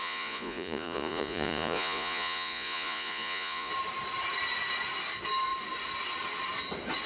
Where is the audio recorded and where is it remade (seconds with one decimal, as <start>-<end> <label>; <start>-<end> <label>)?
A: 0.0-3.7 remade; 3.7-7.1 recorded